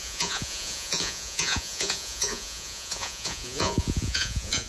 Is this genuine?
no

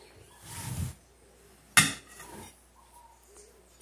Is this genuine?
yes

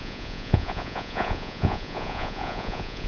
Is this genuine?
no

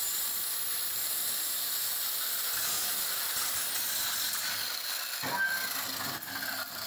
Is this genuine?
yes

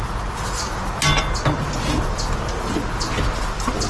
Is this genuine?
yes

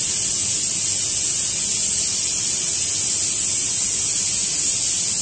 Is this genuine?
yes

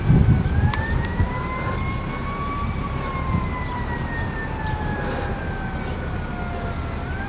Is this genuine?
yes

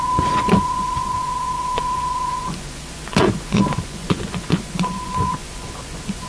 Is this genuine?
no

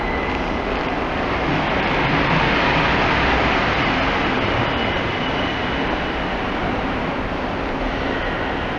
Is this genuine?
yes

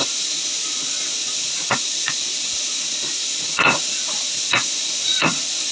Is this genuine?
no